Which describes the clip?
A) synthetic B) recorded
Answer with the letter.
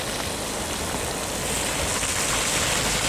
B